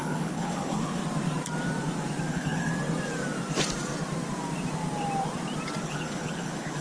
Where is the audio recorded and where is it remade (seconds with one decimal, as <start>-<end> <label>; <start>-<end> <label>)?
0.0-1.0 remade; 1.0-2.3 recorded; 2.3-2.7 remade; 2.7-5.8 recorded; 5.8-6.8 remade